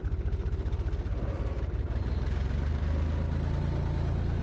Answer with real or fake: fake